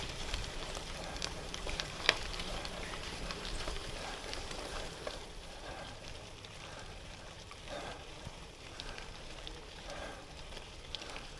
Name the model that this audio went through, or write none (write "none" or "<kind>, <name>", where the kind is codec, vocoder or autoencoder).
vocoder, BigVGAN v2